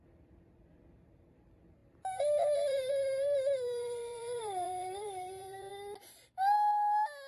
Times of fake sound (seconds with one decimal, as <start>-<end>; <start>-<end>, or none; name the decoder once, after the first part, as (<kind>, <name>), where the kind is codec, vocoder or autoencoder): 1.8-5.7 (vocoder, BigVGAN v2)